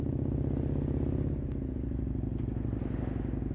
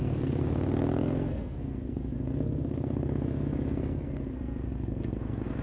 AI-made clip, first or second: second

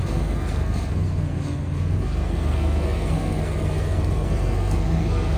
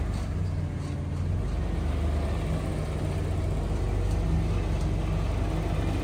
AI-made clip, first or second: first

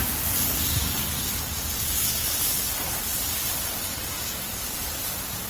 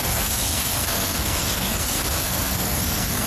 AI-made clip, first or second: second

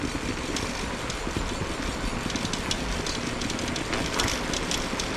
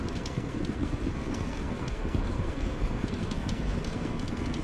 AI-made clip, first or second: second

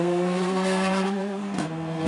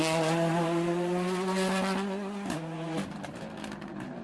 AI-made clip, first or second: first